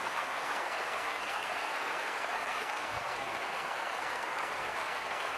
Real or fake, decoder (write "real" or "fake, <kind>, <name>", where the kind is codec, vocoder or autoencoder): fake, codec, SNAC